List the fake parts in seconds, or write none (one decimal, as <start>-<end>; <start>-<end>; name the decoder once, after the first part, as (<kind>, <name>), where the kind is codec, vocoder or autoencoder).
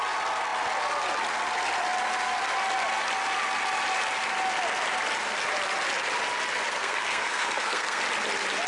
6.7-8.0 (codec, SNAC)